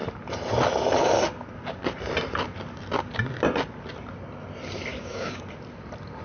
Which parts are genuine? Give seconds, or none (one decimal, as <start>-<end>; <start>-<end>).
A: 0.0-4.9; 5.4-6.2

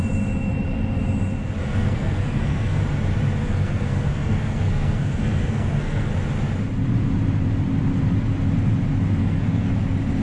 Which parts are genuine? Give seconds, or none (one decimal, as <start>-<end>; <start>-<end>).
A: 0.0-1.6; 2.8-3.4; 6.1-9.2; 9.7-10.2

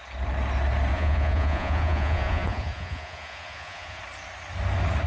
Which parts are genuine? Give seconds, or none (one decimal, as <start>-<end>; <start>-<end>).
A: 0.0-0.9; 4.0-5.1

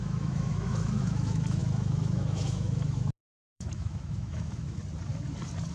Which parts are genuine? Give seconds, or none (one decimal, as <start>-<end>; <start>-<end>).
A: 4.8-5.7

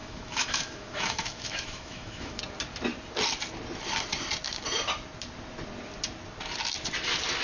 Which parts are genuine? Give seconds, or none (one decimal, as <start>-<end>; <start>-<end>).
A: 2.4-7.4